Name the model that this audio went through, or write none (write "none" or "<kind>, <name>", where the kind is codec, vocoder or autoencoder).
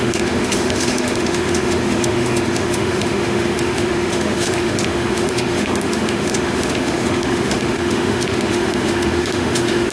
autoencoder, DAC-VAE